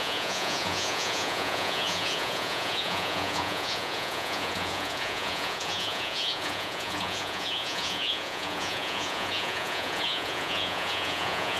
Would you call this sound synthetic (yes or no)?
yes